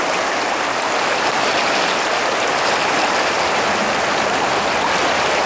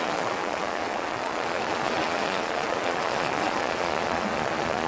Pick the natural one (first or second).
first